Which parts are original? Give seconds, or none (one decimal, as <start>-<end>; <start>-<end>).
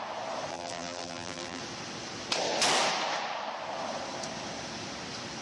0.0-0.5; 1.6-5.4